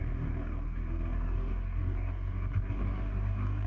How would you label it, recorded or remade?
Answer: remade